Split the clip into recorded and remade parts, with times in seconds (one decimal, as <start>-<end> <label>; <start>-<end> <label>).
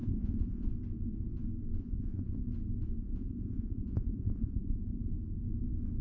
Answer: 0.0-0.7 remade; 0.7-1.8 recorded; 1.8-2.4 remade; 2.4-3.0 recorded; 3.0-5.1 remade; 5.1-6.0 recorded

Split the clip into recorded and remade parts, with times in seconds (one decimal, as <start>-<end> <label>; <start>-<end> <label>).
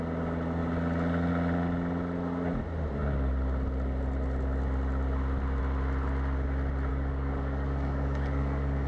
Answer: 0.0-6.9 recorded; 6.9-8.9 remade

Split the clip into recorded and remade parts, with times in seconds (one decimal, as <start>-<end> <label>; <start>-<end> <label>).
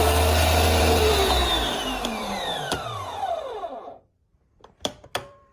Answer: 0.0-0.8 recorded; 0.8-5.5 remade